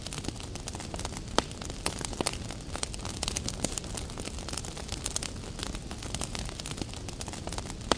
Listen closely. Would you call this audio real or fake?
real